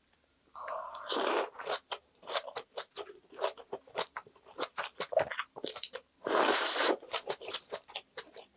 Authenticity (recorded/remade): remade